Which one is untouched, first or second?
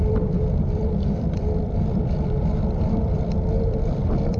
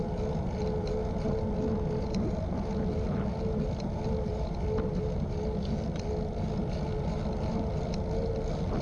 second